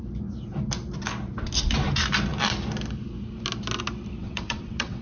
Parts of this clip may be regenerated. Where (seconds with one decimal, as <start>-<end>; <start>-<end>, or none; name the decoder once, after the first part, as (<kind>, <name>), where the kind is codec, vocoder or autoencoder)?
4.2-5.0 (vocoder, WaveNeXt)